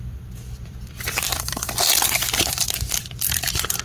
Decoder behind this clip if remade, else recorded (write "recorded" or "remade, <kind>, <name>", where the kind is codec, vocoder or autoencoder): remade, vocoder, BigVGAN v2